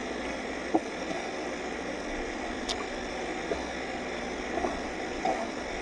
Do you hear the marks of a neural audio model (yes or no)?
no